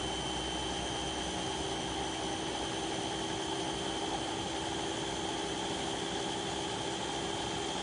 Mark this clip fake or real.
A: real